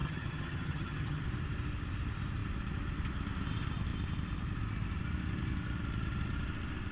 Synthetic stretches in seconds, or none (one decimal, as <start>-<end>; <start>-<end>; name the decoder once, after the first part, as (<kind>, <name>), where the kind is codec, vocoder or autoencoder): 0.0-1.2 (vocoder, HiFi-GAN)